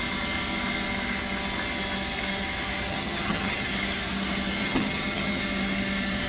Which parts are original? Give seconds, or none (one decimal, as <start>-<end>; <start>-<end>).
0.0-2.9; 3.7-4.6; 5.4-6.3